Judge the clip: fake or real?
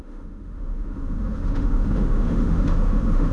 fake